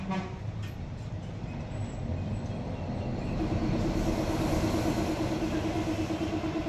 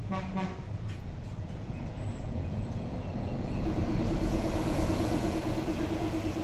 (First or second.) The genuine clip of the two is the first